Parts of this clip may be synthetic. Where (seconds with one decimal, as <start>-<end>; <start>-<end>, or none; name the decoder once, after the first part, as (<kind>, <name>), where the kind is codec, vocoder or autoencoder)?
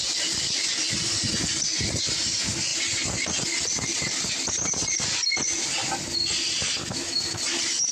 6.8-7.4 (autoencoder, DAC-VAE)